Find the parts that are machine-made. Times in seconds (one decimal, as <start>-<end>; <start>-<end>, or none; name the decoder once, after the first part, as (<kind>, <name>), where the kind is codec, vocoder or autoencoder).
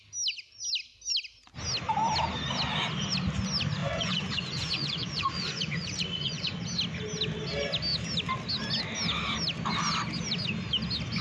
3.8-6.6 (vocoder, Vocos)